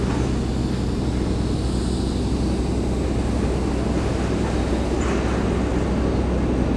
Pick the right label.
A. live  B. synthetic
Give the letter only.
A